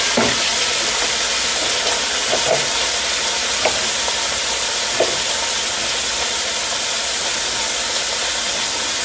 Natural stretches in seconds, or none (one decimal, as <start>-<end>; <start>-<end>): 0.0-9.0